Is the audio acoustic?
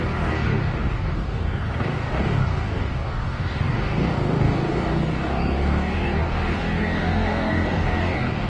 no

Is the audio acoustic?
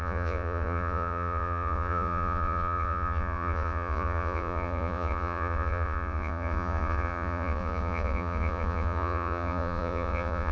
no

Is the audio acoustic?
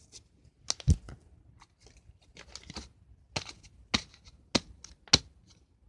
yes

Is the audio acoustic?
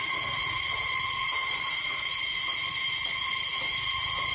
no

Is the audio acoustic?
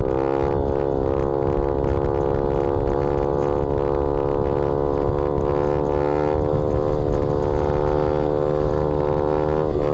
yes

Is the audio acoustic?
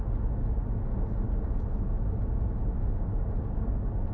yes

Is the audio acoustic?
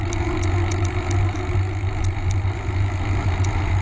yes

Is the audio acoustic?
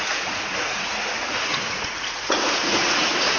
no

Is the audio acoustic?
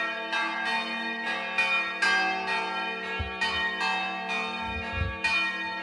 yes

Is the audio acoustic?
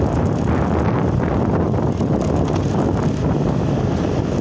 yes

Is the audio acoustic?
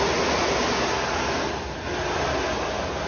yes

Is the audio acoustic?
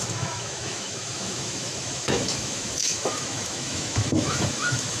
no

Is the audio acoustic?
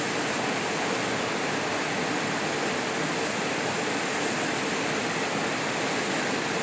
yes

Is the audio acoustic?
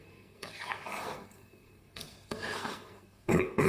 no